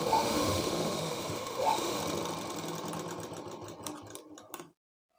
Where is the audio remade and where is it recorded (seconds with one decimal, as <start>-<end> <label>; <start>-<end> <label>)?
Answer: 0.0-2.0 remade; 2.0-5.2 recorded